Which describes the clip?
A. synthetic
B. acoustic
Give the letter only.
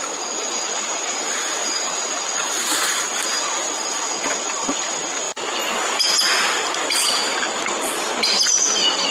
B